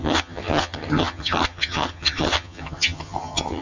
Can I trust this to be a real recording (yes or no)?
no